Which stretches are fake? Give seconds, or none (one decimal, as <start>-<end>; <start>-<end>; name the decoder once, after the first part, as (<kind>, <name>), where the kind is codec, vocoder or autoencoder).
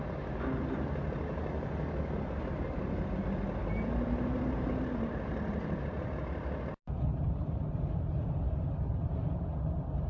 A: 3.6-5.8 (vocoder, BigVGAN v2)